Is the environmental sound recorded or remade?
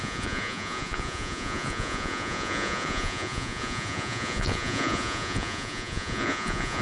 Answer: remade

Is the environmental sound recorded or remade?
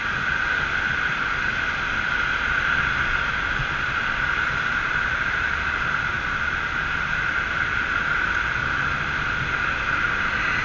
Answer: recorded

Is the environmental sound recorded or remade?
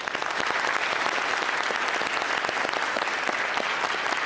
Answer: recorded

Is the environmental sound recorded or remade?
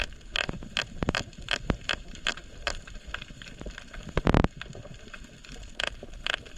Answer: remade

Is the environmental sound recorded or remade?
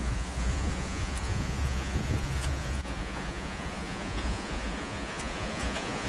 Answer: remade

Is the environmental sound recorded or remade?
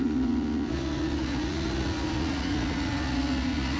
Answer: remade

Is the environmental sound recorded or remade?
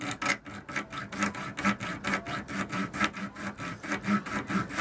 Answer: recorded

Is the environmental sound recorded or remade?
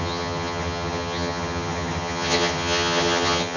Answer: remade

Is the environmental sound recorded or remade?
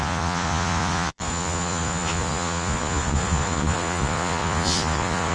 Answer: remade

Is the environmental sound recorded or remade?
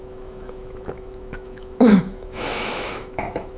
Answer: remade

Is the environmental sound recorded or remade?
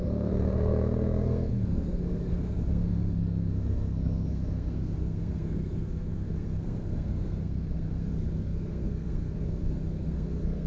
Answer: remade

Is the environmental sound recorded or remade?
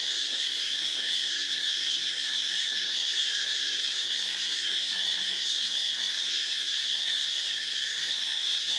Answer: remade